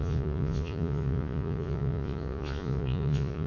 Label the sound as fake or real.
fake